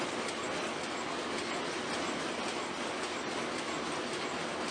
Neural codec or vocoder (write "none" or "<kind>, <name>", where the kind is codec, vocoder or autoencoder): none